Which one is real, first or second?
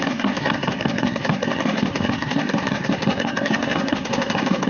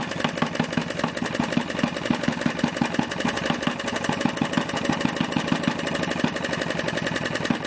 second